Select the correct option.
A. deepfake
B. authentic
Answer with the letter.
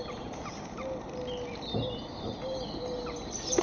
B